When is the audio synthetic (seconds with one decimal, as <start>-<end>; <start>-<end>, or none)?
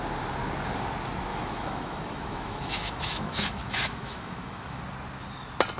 1.3-4.8